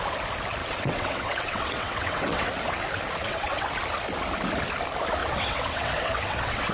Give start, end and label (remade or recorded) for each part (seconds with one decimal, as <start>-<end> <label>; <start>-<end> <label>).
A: 0.0-0.6 recorded; 0.6-2.5 remade; 2.5-3.2 recorded; 3.2-3.7 remade; 3.7-5.2 recorded; 5.2-6.7 remade